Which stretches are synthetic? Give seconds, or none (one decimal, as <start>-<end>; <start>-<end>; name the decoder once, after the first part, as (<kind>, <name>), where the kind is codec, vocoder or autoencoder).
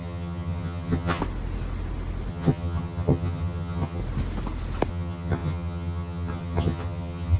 0.0-1.2 (vocoder, HiFi-GAN); 2.3-4.0; 4.9-7.4